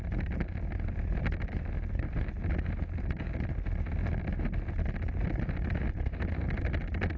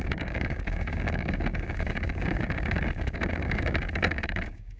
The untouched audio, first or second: first